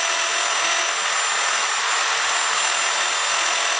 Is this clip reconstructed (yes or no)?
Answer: no